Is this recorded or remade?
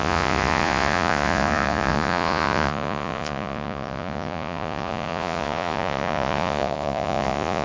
remade